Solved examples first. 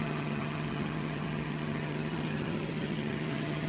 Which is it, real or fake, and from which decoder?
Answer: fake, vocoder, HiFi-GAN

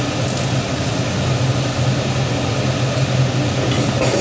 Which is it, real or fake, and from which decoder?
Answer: real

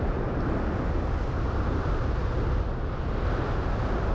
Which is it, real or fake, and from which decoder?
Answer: real